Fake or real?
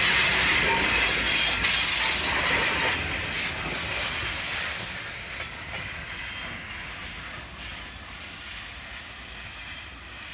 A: real